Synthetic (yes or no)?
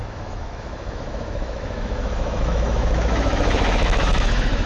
yes